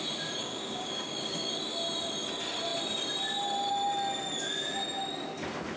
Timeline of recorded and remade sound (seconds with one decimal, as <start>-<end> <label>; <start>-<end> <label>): 0.0-0.4 recorded; 0.4-1.5 remade; 1.5-5.8 recorded